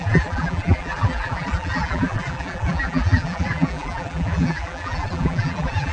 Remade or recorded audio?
remade